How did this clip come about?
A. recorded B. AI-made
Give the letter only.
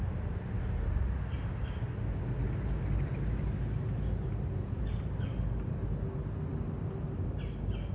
A